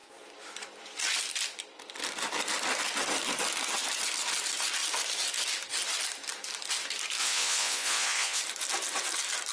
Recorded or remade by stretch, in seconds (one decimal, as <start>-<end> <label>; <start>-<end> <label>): 0.0-7.2 recorded; 7.2-8.4 remade; 8.4-9.5 recorded